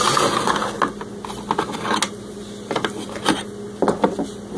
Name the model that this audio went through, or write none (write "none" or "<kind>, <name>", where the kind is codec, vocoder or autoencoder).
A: none